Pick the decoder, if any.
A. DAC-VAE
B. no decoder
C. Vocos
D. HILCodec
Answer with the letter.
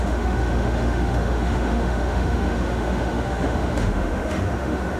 A